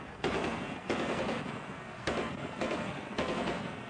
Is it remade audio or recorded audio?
remade